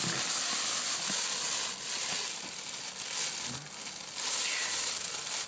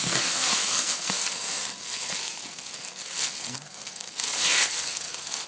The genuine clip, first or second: first